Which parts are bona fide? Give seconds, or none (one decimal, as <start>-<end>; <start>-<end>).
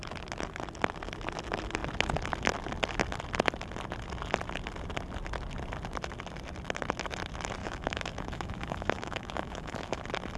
0.0-7.6; 10.0-10.4